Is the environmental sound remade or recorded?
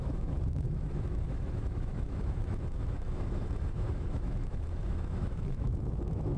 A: remade